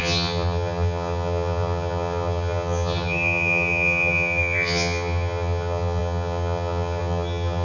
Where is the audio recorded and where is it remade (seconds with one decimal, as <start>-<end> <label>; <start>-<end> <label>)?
0.0-7.6 remade